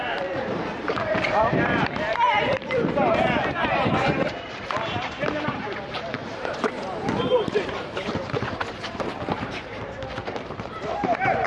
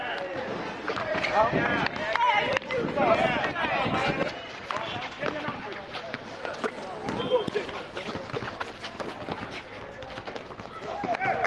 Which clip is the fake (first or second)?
first